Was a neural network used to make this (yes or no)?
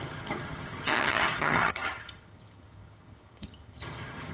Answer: yes